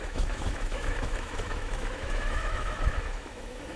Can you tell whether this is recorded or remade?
remade